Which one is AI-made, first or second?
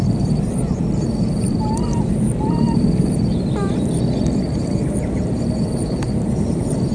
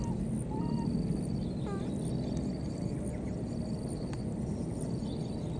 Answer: first